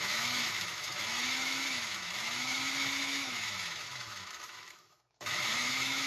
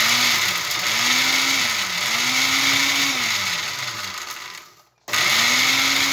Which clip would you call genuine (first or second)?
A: second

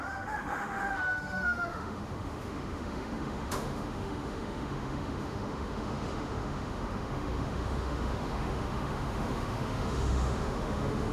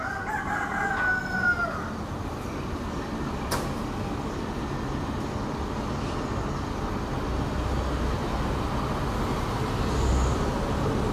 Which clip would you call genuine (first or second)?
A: second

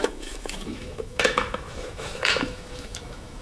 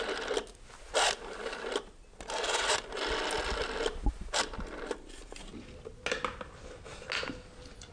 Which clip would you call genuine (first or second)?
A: second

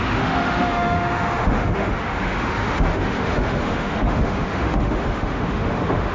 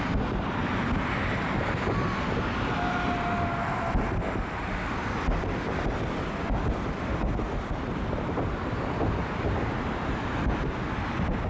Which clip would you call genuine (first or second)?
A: second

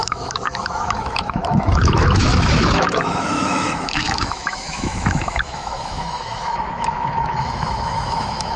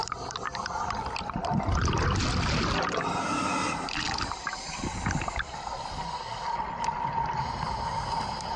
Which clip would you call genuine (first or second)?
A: second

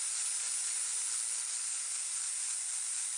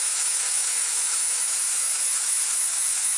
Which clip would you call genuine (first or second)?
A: first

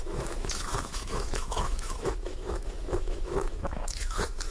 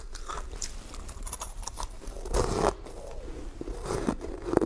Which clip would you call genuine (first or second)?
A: second